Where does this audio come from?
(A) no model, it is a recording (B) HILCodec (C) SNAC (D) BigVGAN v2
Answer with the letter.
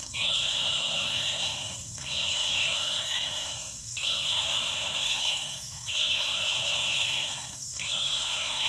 C